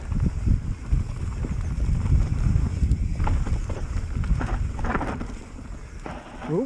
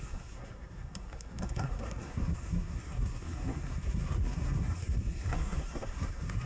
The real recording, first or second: first